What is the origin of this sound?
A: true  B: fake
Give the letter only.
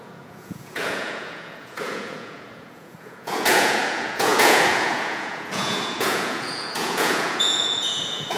B